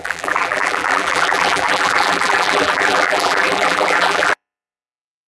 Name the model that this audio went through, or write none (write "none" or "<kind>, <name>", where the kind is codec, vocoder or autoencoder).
vocoder, BigVGAN v2